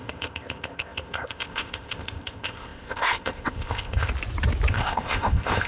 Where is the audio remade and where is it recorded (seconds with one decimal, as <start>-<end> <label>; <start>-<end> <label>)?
0.0-4.1 remade; 4.1-4.7 recorded; 4.7-5.7 remade